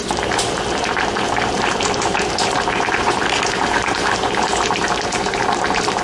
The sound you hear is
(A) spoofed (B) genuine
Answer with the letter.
A